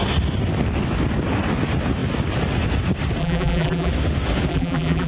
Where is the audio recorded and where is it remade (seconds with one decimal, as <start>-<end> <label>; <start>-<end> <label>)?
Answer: 0.0-3.2 recorded; 3.2-3.9 remade; 3.9-4.5 recorded; 4.5-5.1 remade